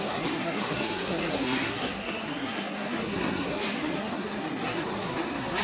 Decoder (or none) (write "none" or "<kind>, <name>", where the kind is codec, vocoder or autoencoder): codec, SNAC